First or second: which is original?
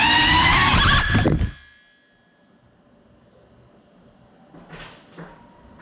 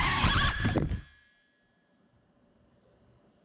first